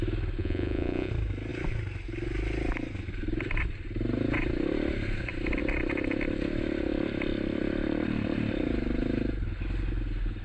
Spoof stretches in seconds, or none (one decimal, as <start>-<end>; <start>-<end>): 0.4-1.1